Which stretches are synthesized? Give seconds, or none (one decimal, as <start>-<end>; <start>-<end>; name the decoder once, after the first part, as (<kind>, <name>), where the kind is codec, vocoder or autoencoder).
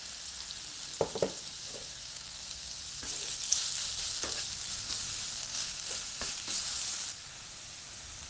1.9-2.8 (codec, SNAC); 5.4-5.9